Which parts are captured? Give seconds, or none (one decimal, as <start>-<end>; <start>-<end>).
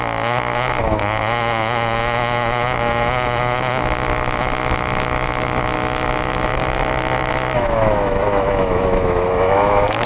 6.5-7.3